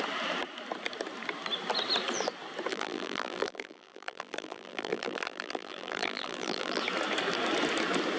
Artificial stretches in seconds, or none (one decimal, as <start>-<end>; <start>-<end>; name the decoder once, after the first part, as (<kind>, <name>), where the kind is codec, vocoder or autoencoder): 2.7-6.8 (vocoder, BigVGAN v2)